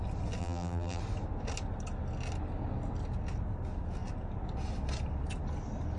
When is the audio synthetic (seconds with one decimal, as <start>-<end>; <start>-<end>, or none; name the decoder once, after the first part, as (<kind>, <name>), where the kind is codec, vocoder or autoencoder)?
0.4-1.0 (vocoder, BigVGAN v2)